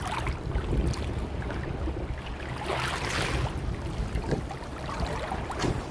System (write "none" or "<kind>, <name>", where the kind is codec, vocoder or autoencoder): none